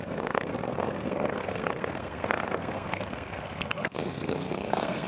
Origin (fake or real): fake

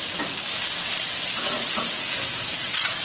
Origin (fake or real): real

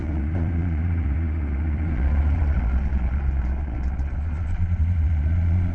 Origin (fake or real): fake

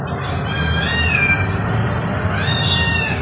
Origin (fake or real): real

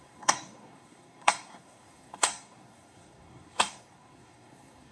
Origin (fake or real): fake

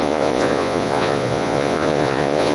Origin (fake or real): fake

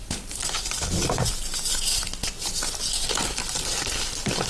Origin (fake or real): real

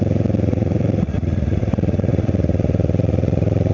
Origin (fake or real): fake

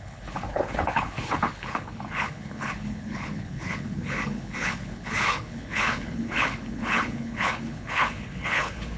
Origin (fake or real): fake